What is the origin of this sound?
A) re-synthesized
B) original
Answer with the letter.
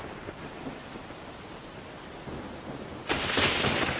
B